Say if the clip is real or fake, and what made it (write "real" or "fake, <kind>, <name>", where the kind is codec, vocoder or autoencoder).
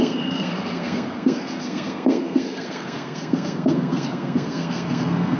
fake, codec, SNAC